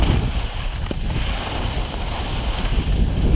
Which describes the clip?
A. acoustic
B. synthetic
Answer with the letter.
A